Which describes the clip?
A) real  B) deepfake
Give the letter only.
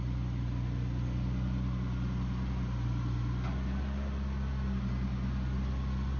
A